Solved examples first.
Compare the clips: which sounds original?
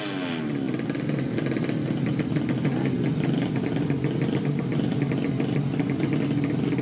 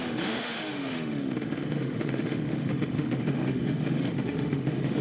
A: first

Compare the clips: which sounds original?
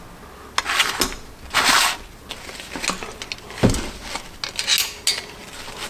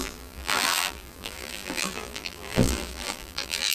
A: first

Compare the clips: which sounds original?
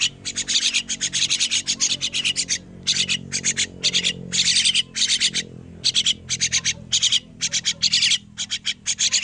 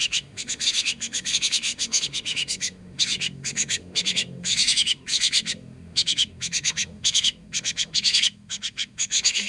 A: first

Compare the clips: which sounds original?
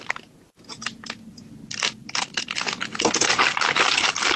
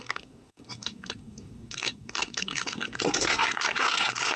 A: first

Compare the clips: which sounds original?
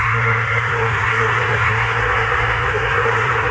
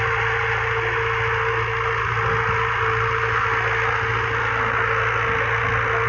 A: second